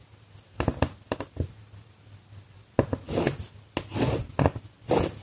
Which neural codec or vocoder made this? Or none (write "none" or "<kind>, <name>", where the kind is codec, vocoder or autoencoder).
none